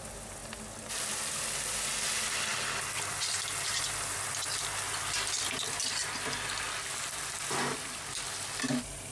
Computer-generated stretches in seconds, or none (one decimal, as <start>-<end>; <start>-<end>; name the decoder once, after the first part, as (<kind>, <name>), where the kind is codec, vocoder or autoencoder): none